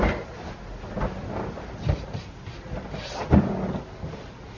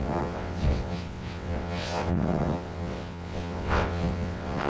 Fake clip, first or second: second